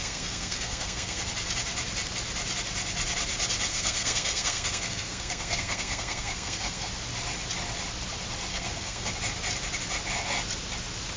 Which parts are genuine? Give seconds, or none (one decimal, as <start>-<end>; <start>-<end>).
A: 1.2-3.7; 6.9-8.5; 9.1-11.2